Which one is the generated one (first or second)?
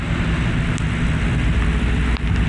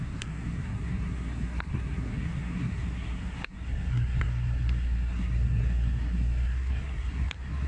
second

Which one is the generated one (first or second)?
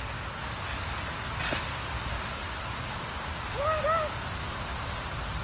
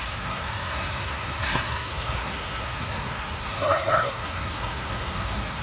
second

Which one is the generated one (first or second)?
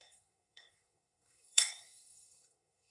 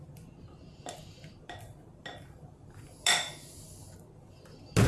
first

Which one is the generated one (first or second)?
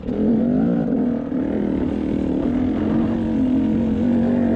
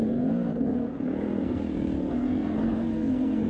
second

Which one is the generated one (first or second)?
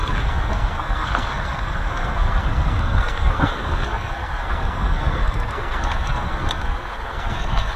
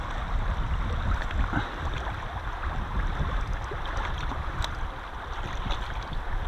first